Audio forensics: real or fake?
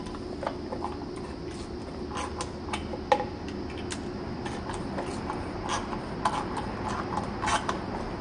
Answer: real